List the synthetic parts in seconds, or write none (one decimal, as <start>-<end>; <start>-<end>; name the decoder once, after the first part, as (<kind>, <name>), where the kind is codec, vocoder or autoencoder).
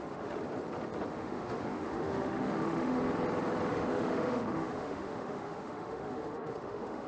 0.0-0.4 (autoencoder, DAC-VAE); 1.1-3.0; 3.7-7.1